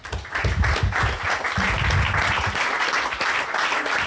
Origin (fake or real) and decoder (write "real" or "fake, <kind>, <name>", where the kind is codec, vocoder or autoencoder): real